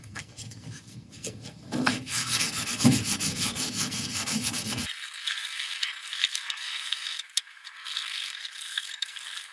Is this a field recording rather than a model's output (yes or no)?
no